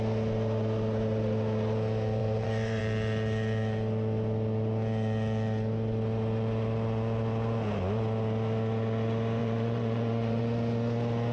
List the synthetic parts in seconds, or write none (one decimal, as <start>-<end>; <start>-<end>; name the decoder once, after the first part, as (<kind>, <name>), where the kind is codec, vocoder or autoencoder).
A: 2.2-2.8 (vocoder, Vocos); 9.4-10.4